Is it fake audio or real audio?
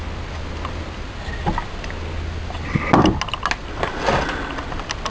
real